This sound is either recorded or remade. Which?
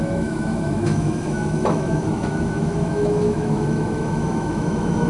remade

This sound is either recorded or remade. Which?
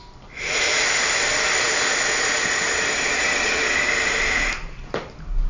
recorded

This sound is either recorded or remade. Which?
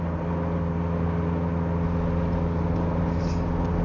recorded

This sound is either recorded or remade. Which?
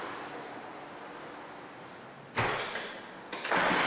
recorded